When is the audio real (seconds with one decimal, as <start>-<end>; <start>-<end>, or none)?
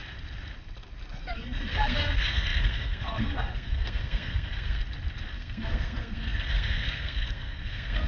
0.0-1.2; 4.8-5.3